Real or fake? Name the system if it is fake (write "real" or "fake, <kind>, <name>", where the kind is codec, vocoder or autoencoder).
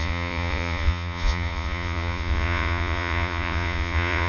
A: fake, vocoder, Vocos